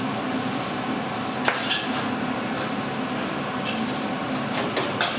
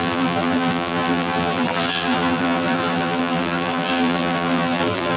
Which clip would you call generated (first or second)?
second